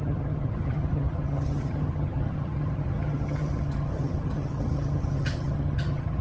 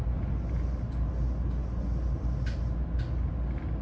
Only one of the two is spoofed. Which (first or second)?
first